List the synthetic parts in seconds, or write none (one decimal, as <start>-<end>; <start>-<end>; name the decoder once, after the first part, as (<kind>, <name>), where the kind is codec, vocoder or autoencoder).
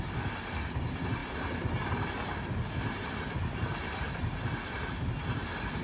none